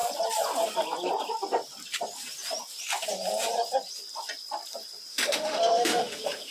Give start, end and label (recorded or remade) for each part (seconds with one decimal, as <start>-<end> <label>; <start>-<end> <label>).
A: 0.0-5.1 recorded; 5.1-6.5 remade